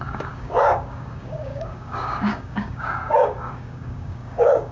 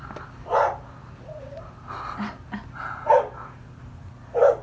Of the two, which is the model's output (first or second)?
first